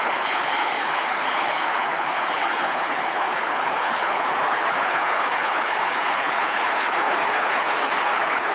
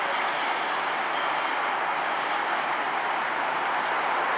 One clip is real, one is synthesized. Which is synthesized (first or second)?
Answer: first